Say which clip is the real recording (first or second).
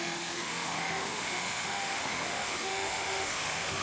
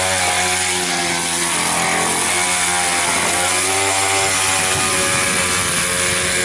second